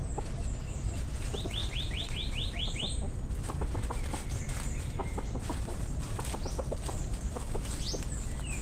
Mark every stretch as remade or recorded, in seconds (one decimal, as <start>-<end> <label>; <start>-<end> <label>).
0.0-1.6 recorded; 1.6-3.3 remade; 3.3-5.0 recorded; 5.0-5.8 remade; 5.8-8.6 recorded

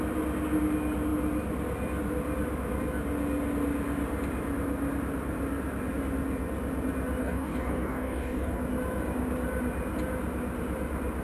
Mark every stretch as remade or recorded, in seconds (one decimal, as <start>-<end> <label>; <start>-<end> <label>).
0.0-7.2 recorded; 7.2-8.6 remade; 8.6-11.2 recorded

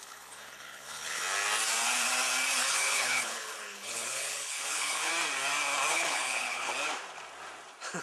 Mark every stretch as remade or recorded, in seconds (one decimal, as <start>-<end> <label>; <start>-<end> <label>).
0.0-1.2 remade; 1.2-2.7 recorded; 2.7-5.1 remade; 5.1-5.9 recorded; 5.9-6.7 remade; 6.7-8.0 recorded

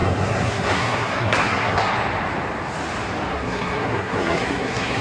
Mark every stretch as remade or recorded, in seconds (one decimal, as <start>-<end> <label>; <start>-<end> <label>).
0.0-1.9 remade; 1.9-3.3 recorded; 3.3-5.0 remade

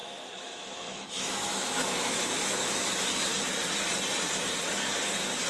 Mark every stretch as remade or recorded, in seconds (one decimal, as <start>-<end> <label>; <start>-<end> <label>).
0.0-3.3 remade; 3.3-5.5 recorded

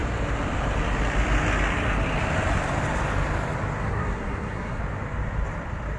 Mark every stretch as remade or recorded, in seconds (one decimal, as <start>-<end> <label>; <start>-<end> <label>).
0.0-3.8 recorded; 3.8-4.8 remade; 4.8-6.0 recorded